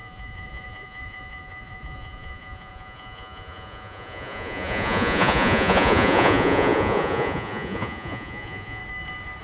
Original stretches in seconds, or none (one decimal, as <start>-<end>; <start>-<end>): 8.8-9.4